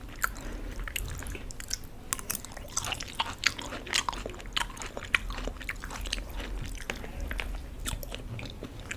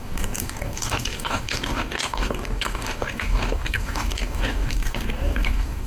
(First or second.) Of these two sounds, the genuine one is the first